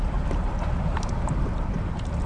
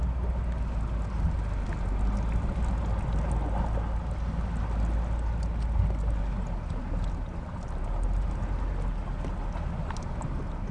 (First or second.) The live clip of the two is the second